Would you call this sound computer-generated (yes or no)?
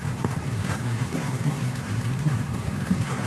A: yes